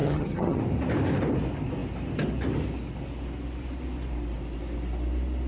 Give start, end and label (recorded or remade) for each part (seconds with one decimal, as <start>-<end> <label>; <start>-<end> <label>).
0.0-0.6 remade; 0.6-5.5 recorded